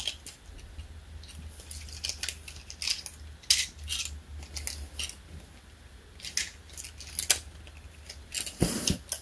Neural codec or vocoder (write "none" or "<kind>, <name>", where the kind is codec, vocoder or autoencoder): none